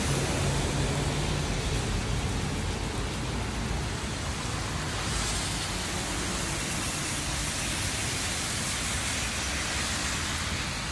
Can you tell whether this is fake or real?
real